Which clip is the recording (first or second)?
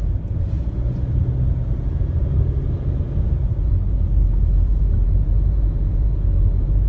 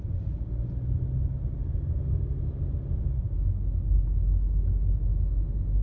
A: second